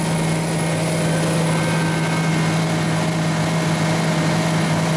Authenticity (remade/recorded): recorded